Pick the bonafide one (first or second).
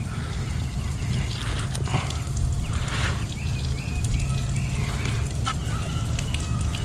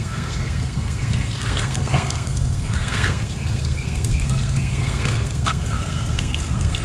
first